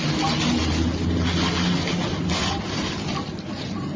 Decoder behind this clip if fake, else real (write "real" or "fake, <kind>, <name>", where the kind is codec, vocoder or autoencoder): real